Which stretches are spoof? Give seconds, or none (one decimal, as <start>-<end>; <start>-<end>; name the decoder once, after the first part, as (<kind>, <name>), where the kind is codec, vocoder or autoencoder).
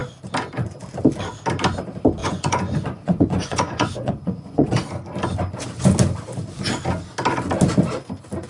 2.2-4.7 (vocoder, Vocos)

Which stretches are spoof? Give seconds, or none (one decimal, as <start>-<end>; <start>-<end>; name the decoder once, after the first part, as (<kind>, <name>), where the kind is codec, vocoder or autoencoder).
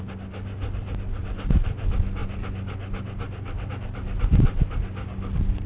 none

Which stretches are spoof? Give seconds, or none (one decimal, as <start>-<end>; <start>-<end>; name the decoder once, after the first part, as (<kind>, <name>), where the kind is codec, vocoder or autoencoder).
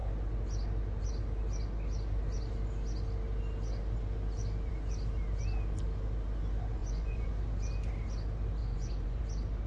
6.8-7.3 (vocoder, Vocos); 8.6-9.2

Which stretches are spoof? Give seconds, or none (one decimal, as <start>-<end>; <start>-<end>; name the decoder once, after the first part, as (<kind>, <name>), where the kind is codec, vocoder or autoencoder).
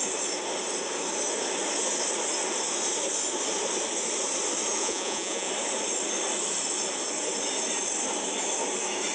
4.8-5.5 (vocoder, Vocos)